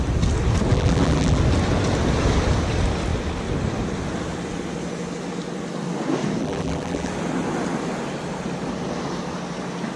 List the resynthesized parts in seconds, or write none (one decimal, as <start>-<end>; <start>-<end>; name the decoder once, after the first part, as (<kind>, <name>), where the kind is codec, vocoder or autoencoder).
0.7-1.4 (vocoder, BigVGAN v2); 6.4-7.1